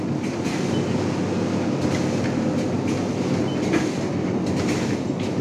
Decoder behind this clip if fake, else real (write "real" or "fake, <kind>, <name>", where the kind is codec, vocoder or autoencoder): real